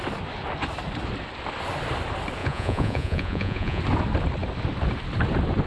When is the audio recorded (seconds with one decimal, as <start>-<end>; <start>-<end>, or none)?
0.0-2.4; 3.8-5.7